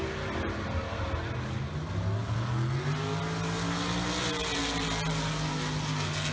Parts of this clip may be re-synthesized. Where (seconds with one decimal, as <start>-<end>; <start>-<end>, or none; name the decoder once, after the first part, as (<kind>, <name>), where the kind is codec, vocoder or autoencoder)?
none